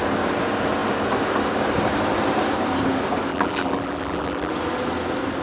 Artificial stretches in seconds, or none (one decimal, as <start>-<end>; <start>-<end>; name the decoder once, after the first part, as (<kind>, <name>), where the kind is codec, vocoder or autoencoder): 3.3-4.5 (vocoder, BigVGAN v2)

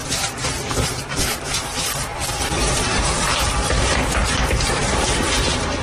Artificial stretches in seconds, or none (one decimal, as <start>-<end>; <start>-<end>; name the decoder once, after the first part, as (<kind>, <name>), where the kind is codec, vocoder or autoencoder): 0.0-5.8 (vocoder, BigVGAN v2)

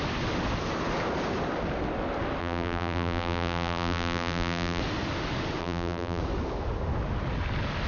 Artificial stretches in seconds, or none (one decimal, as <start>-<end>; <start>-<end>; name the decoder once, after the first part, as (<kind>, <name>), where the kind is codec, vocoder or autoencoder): 2.4-4.8 (vocoder, BigVGAN v2); 5.6-6.2

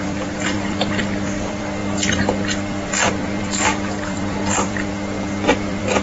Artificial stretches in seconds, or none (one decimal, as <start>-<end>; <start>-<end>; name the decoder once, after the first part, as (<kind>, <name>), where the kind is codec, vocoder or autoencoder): 0.0-4.9 (vocoder, BigVGAN v2); 5.6-6.0

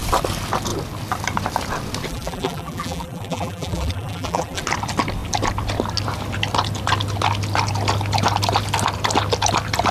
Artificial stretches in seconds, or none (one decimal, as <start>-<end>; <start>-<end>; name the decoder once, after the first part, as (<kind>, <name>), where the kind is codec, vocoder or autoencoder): 2.1-4.6 (vocoder, BigVGAN v2)

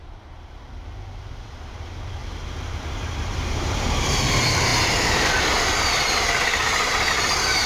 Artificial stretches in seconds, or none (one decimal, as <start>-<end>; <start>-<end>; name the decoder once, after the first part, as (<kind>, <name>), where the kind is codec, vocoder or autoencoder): 0.0-2.2 (vocoder, BigVGAN v2); 3.2-7.7

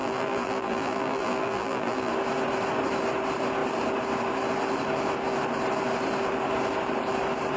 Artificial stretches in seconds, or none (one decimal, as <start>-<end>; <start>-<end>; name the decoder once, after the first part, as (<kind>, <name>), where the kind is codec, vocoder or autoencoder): 0.0-2.1 (vocoder, BigVGAN v2)

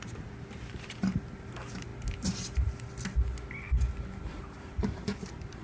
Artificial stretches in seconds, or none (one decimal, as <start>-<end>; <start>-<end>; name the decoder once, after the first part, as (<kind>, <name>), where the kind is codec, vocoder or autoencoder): 0.0-1.9 (vocoder, BigVGAN v2); 4.2-5.6